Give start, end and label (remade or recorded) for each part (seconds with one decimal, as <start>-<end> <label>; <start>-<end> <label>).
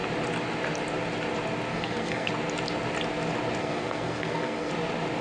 0.0-1.7 recorded; 1.7-2.3 remade; 2.3-3.6 recorded; 3.6-4.7 remade; 4.7-5.2 recorded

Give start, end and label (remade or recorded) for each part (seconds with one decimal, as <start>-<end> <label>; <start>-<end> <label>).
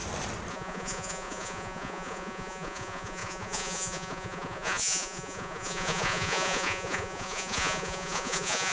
0.0-0.5 recorded; 0.5-8.7 remade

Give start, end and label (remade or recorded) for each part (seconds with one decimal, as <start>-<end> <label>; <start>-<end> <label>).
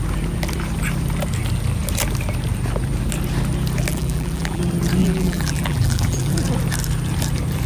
0.0-3.9 recorded; 3.9-4.6 remade; 4.6-5.0 recorded; 5.0-6.3 remade; 6.3-7.7 recorded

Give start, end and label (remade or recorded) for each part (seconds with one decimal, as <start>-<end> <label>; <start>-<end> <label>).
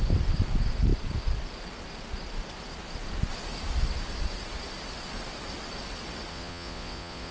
0.0-6.3 recorded; 6.3-7.3 remade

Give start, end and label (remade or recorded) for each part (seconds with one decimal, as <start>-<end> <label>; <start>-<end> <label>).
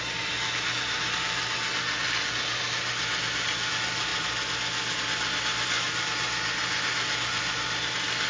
0.0-8.3 recorded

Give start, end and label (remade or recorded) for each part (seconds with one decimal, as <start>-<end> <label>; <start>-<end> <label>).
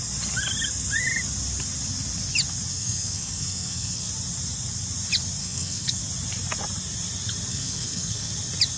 0.0-2.7 recorded; 2.7-4.1 remade; 4.1-5.4 recorded; 5.4-6.0 remade; 6.0-7.5 recorded; 7.5-8.3 remade; 8.3-8.8 recorded